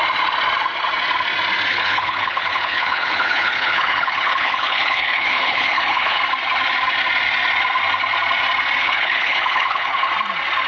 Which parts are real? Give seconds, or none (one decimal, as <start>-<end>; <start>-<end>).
0.0-1.7; 6.2-8.8; 10.1-10.7